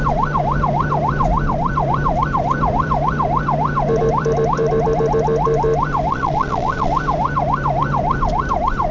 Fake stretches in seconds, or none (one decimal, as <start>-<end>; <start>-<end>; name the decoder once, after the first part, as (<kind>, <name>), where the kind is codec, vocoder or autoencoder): 6.1-6.9 (vocoder, Vocos)